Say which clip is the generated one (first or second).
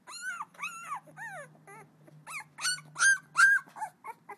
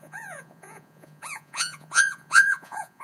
second